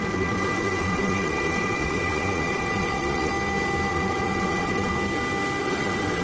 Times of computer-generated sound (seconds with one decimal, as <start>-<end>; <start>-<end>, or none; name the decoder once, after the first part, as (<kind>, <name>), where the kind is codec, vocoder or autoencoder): 0.0-3.3 (vocoder, WaveNeXt); 3.9-4.9; 5.6-6.2